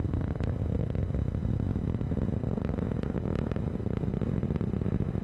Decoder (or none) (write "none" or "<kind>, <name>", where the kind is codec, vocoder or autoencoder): none